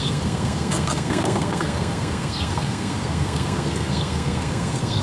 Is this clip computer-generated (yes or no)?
yes